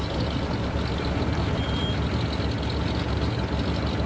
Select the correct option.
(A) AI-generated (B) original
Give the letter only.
B